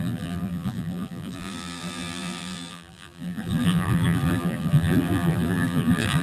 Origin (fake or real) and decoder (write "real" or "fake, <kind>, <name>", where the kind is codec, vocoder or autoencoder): fake, vocoder, BigVGAN v2